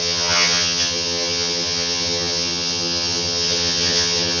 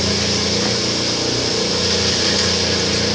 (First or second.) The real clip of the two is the second